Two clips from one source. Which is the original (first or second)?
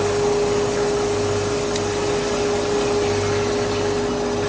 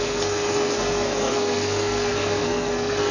first